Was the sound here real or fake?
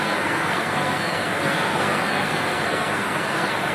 fake